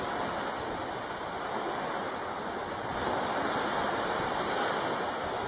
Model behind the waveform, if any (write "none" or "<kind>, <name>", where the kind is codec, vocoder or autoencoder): none